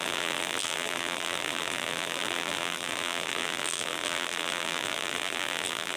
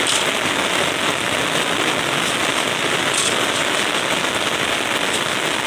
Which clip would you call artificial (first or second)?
first